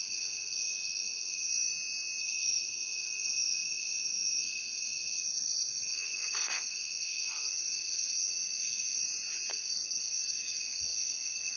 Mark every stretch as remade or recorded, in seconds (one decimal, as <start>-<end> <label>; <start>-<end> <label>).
0.0-1.5 remade; 1.5-2.2 recorded; 2.2-9.0 remade; 9.0-9.5 recorded; 9.5-11.6 remade